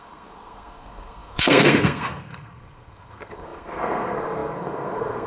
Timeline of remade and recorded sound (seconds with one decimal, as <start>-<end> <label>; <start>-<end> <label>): 0.0-5.3 remade